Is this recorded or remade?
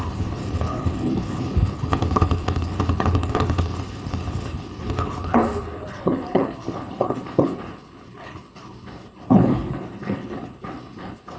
remade